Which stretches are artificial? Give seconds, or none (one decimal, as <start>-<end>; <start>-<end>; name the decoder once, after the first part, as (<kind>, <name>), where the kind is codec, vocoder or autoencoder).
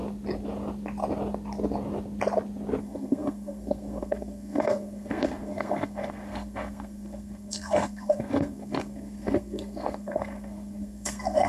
2.8-11.5 (codec, SNAC)